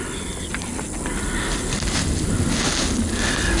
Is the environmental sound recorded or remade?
recorded